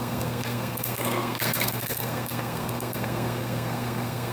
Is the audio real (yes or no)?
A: no